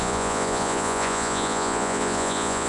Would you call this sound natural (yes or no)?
no